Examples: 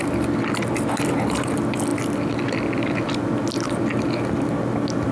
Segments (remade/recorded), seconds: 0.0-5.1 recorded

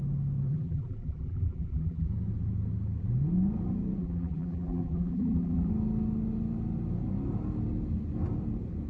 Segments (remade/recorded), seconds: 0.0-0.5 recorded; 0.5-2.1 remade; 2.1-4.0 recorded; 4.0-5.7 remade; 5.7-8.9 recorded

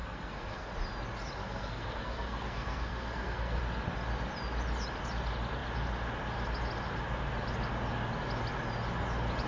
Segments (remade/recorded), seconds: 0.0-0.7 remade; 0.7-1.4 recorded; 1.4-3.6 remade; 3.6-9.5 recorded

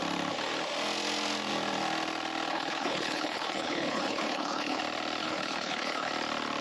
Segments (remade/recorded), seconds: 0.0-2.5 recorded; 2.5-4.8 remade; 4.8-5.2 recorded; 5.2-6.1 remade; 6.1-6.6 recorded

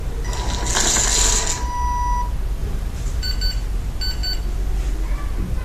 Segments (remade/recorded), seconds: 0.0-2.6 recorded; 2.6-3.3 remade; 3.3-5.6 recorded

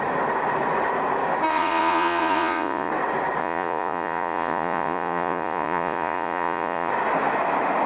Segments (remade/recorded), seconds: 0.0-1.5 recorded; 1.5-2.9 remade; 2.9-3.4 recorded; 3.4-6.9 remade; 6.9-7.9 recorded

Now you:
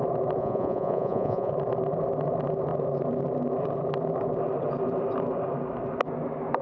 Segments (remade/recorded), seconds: 0.0-0.4 recorded; 0.4-1.5 remade; 1.5-6.6 recorded

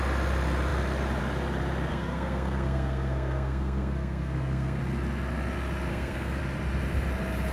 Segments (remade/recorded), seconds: 0.0-1.9 recorded; 1.9-4.8 remade; 4.8-5.9 recorded; 5.9-6.4 remade; 6.4-7.5 recorded